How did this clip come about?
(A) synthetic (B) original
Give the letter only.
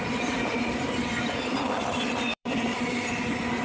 A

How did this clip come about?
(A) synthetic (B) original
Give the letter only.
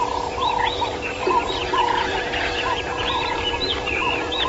A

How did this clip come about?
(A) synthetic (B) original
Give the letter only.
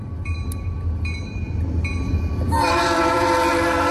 A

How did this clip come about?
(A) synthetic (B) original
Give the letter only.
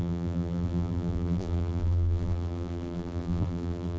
A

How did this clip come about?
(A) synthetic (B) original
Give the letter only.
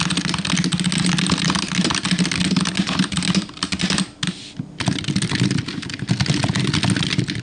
B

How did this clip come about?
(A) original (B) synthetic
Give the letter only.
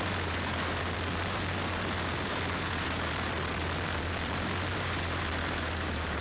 B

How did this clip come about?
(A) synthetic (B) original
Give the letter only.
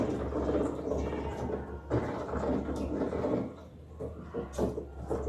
B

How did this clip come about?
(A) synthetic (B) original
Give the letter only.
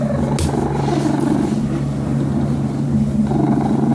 B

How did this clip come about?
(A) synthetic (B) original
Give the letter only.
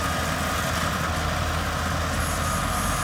B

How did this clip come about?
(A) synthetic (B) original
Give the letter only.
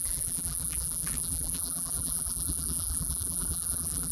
A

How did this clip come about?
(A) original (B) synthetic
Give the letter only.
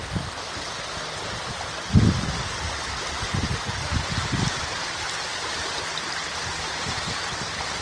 A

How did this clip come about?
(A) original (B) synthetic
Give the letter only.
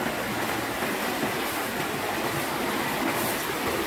A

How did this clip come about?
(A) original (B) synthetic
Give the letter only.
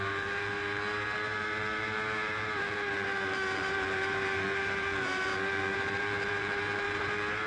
B